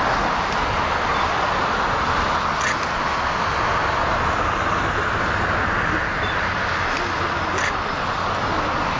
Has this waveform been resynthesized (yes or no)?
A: no